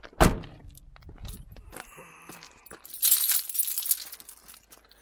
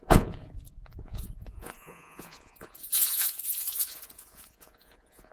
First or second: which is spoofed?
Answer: second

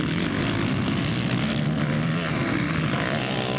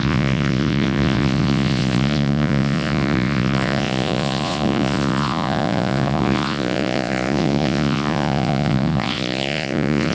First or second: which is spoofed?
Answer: second